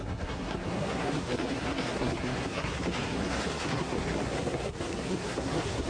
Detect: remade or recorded remade